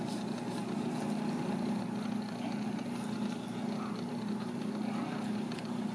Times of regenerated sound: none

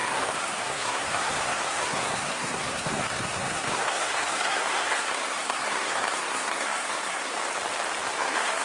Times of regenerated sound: 0.0-7.3 (codec, SNAC); 8.1-8.6

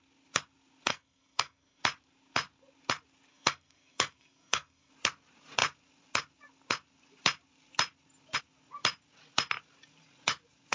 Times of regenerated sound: 0.9-1.8 (codec, SNAC); 3.3-4.9

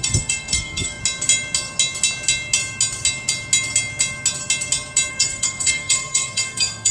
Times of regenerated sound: 0.0-1.0 (codec, SNAC); 5.1-6.9

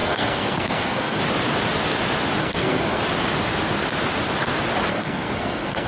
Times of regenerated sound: 0.0-1.2 (codec, SNAC); 2.4-3.0; 4.9-5.9

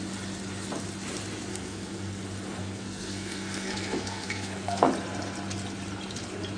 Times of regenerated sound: 1.5-2.2 (codec, SNAC); 2.6-4.9

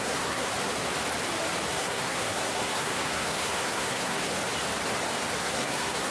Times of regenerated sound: 0.0-0.5 (codec, SNAC); 1.7-4.3; 5.4-6.1

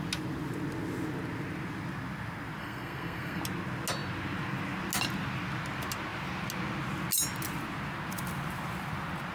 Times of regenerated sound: 2.6-3.4 (codec, SNAC)